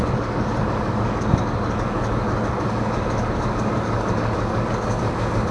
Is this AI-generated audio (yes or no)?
yes